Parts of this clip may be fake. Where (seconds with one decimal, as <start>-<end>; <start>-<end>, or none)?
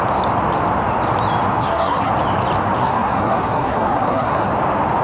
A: 1.6-2.1; 2.8-4.5